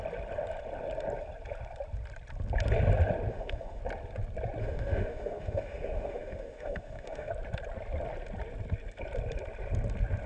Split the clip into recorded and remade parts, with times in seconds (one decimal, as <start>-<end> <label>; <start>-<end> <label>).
0.0-3.3 recorded; 3.3-3.8 remade; 3.8-4.6 recorded; 4.6-7.3 remade; 7.3-10.3 recorded